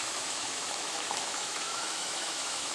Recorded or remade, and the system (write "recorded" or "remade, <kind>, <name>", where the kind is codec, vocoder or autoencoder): remade, autoencoder, DAC-VAE